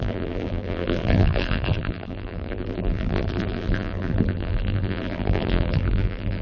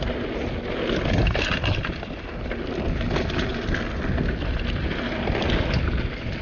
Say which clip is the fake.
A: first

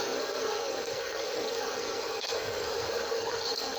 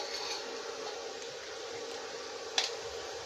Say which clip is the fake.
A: first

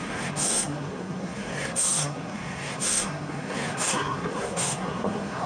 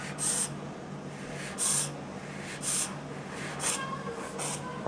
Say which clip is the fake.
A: first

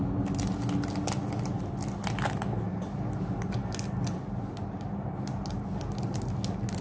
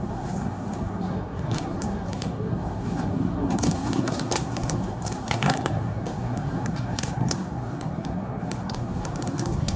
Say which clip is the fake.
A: second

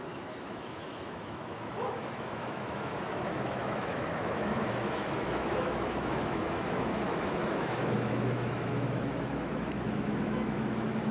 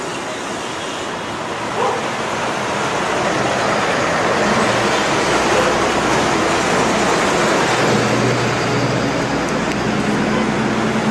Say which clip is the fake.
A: first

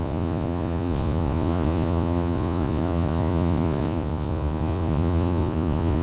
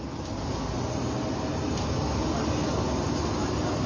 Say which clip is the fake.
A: first